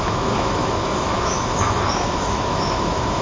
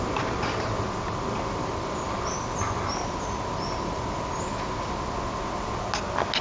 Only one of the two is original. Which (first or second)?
second